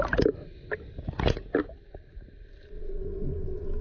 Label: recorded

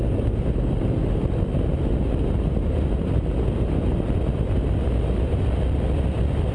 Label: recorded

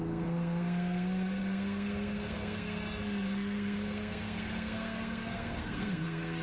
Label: remade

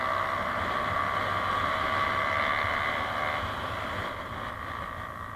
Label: recorded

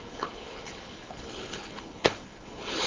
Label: remade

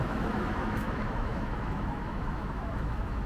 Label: remade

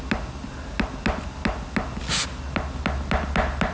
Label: recorded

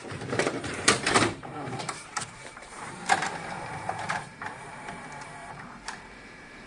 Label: remade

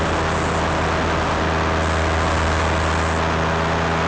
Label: recorded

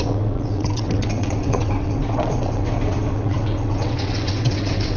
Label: remade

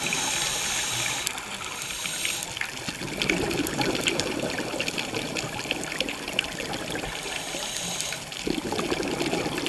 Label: recorded